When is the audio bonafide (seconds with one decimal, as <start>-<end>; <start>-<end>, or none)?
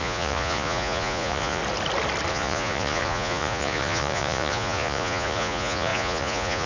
1.6-2.3